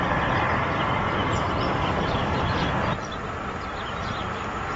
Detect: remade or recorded recorded